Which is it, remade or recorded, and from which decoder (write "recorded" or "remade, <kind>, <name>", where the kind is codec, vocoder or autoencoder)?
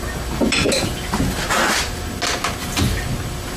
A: recorded